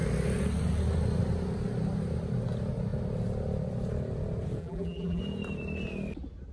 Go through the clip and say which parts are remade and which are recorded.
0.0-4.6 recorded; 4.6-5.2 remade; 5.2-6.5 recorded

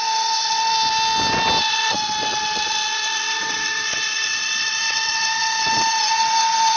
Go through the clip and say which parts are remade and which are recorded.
0.0-0.7 remade; 0.7-1.6 recorded; 1.6-6.8 remade

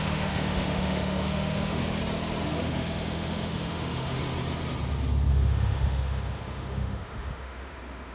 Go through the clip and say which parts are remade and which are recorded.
0.0-1.8 remade; 1.8-2.5 recorded; 2.5-4.2 remade; 4.2-5.3 recorded; 5.3-8.1 remade